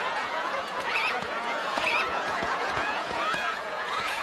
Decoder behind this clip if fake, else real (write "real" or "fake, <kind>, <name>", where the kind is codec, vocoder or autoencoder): fake, vocoder, Vocos